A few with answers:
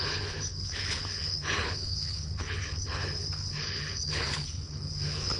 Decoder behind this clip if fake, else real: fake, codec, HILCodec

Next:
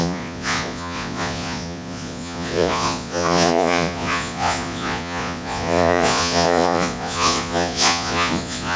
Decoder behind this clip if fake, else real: fake, vocoder, Vocos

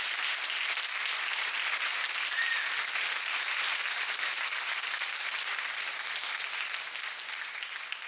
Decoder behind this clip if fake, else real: real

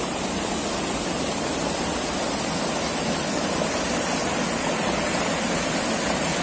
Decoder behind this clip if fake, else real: real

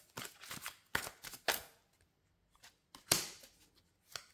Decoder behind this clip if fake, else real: real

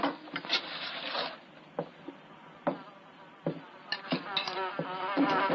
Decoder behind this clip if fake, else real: real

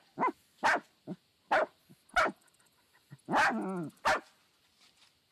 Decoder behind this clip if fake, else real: real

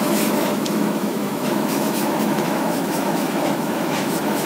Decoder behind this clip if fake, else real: fake, autoencoder, DAC-VAE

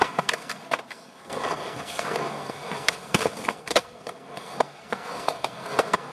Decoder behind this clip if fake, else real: fake, codec, SNAC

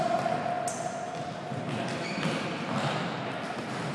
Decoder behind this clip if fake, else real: real